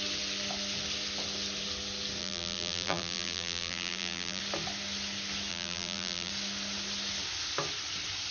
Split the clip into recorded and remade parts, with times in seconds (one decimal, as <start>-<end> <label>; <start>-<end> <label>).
0.0-2.2 recorded; 2.2-4.4 remade; 4.4-5.5 recorded; 5.5-6.3 remade; 6.3-8.3 recorded